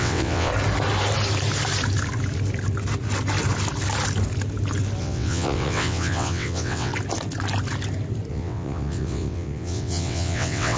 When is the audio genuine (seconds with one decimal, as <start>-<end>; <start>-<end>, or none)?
0.5-5.0; 6.9-8.3